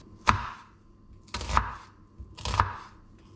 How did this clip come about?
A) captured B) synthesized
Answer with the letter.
A